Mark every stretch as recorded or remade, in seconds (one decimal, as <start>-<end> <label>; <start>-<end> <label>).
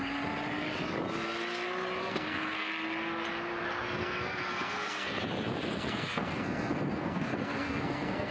0.0-2.0 recorded; 2.0-2.7 remade; 2.7-4.0 recorded; 4.0-5.2 remade; 5.2-5.7 recorded; 5.7-8.3 remade